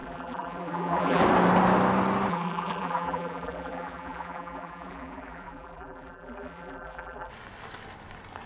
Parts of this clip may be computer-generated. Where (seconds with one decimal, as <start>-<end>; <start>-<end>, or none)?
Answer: 0.0-1.2; 2.3-7.3